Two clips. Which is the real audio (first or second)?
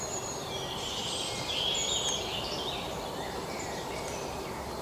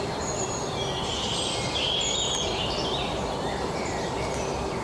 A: second